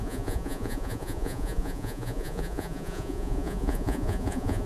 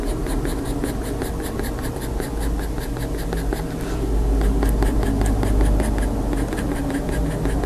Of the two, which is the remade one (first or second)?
first